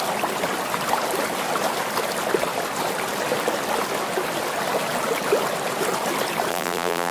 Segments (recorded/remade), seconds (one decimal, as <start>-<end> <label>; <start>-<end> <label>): 0.0-6.5 recorded; 6.5-7.1 remade